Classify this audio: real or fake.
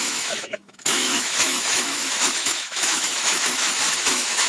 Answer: fake